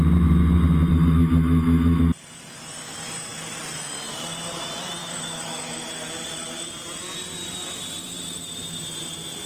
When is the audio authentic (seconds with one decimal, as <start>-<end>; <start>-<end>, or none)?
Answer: 0.0-0.9; 2.0-5.0; 5.9-9.5